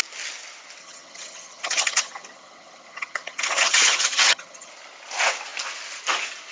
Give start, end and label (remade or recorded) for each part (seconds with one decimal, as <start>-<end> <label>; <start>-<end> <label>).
0.0-0.8 recorded; 0.8-4.7 remade; 4.7-6.5 recorded